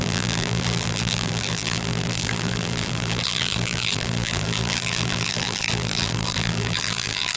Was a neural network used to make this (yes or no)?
yes